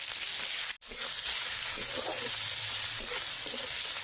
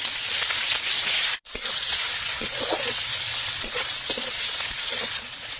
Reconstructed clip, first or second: second